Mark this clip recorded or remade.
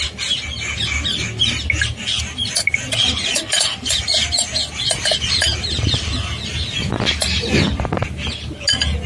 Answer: recorded